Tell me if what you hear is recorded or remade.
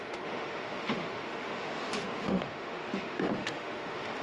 remade